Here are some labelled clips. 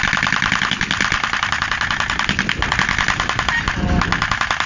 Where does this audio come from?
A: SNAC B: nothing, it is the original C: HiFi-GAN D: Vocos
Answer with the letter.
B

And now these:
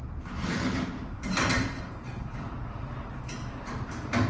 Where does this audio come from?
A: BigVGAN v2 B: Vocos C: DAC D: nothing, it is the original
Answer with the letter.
A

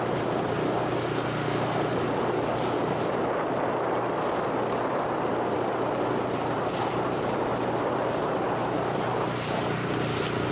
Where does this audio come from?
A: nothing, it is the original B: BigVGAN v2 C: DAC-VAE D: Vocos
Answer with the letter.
A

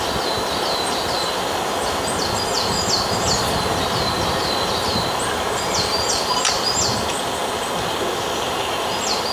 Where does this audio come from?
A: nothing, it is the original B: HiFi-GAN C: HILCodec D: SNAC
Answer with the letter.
A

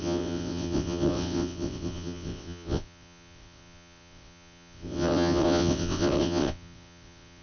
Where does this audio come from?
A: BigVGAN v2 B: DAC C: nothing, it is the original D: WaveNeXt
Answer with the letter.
D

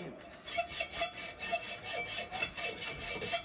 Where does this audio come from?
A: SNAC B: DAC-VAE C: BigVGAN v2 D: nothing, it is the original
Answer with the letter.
D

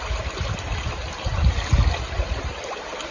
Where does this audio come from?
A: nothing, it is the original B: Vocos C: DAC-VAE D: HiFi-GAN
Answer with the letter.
A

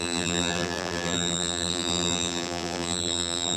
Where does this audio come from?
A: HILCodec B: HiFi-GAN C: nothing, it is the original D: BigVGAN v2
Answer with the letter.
D